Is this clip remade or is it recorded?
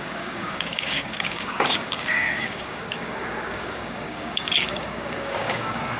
remade